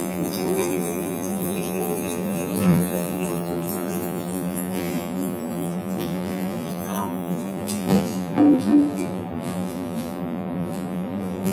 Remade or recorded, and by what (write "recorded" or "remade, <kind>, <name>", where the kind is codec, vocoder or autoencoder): remade, vocoder, BigVGAN v2